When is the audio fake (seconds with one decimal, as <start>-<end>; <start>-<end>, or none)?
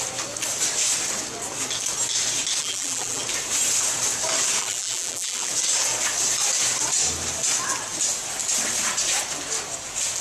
2.6-3.2; 4.6-5.5